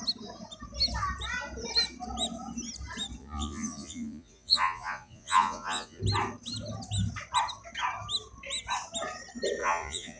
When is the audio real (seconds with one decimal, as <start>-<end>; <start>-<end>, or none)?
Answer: 0.0-3.2; 6.0-9.6